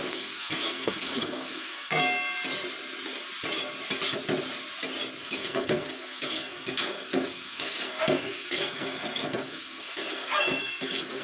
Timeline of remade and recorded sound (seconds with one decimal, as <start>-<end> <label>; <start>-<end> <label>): 0.0-2.0 remade; 2.0-5.2 recorded; 5.2-11.2 remade